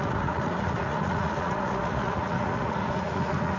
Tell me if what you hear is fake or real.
fake